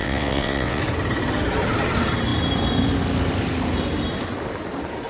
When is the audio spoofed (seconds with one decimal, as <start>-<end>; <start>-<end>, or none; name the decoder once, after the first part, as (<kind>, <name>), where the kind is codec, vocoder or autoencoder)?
0.0-0.8 (vocoder, WaveNeXt)